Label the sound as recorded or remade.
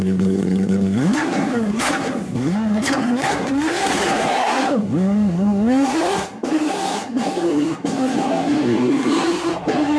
remade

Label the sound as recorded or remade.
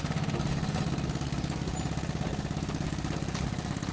recorded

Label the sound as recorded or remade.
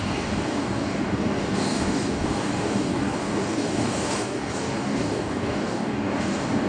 remade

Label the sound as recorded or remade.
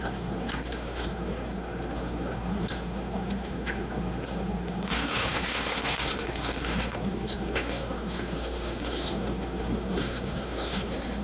remade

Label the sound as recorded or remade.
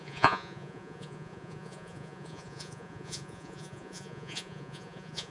remade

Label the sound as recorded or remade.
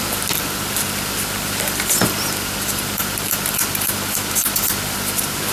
recorded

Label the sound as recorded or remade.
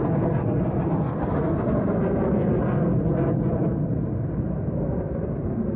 recorded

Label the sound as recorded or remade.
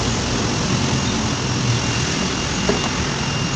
recorded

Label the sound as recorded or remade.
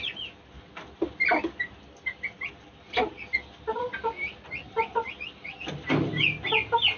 recorded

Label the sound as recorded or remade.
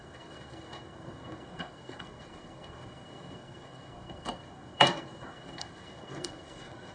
remade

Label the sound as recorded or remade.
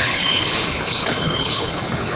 remade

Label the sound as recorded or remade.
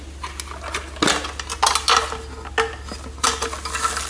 recorded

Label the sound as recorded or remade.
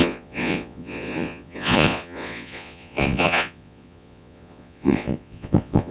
remade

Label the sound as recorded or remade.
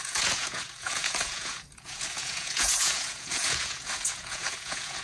remade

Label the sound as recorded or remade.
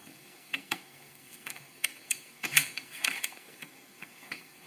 remade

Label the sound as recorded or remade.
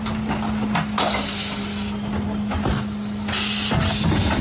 recorded